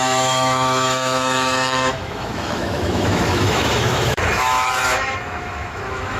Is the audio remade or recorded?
remade